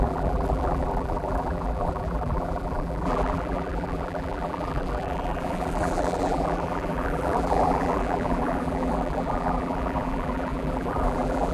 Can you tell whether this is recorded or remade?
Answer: remade